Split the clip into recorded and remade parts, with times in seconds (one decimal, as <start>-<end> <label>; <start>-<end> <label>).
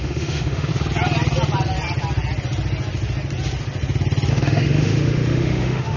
0.0-0.7 remade; 0.7-4.3 recorded; 4.3-6.0 remade